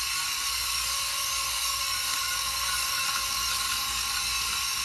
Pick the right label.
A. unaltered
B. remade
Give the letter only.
B